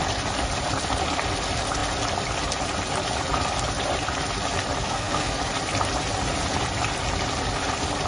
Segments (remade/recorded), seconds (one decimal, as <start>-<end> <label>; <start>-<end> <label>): 0.0-4.8 recorded; 4.8-5.4 remade; 5.4-8.1 recorded